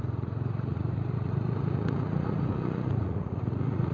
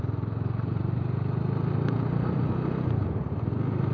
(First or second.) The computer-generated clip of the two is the first